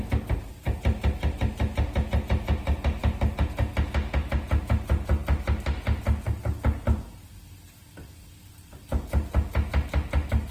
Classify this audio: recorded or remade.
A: recorded